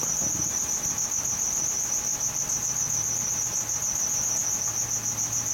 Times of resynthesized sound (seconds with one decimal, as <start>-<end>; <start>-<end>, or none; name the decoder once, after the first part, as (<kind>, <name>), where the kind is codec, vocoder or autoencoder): 0.0-4.4 (vocoder, BigVGAN v2); 5.1-5.5